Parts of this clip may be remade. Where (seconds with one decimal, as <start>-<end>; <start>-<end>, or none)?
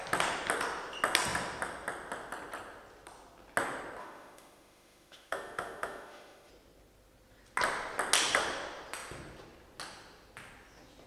4.0-6.5